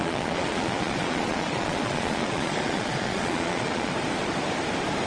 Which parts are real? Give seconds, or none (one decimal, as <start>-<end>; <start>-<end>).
3.9-5.1